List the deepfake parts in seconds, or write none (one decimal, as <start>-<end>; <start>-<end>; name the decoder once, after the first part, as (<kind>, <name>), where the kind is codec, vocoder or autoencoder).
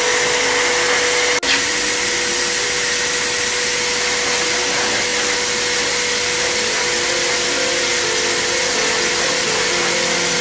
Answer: none